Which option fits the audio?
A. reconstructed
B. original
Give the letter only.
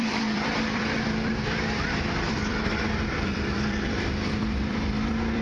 A